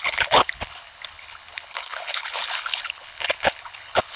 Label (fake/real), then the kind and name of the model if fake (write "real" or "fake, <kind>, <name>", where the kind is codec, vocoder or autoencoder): fake, codec, HILCodec